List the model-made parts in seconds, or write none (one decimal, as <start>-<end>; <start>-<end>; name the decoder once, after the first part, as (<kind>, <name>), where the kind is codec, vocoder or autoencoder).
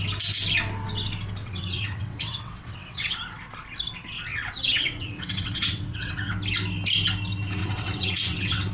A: 1.4-3.1 (vocoder, WaveNeXt); 4.3-6.3; 7.6-8.7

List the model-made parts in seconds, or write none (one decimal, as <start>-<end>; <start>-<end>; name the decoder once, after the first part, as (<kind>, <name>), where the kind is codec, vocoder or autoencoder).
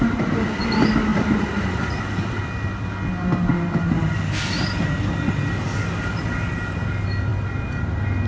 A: 1.1-2.4 (vocoder, BigVGAN v2)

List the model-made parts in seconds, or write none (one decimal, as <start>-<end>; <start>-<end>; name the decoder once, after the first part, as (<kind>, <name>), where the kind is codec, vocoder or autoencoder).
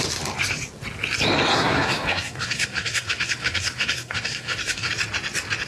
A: 1.5-4.9 (codec, SNAC)